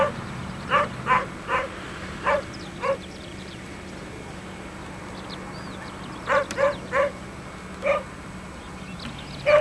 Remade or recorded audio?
recorded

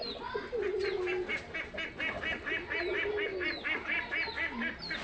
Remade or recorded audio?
recorded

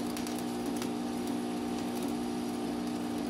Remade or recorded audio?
recorded